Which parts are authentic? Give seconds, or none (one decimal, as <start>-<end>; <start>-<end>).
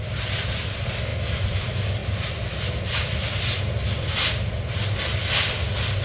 0.0-6.0